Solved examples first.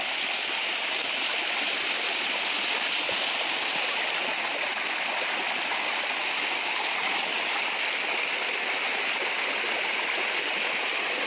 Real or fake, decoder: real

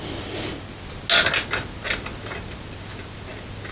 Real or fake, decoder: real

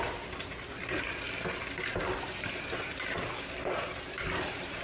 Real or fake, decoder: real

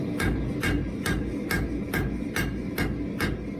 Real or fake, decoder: real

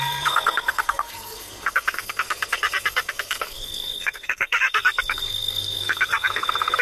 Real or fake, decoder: fake, codec, SNAC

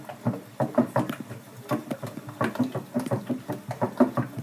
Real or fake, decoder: real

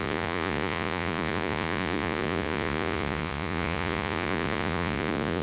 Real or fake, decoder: fake, vocoder, Vocos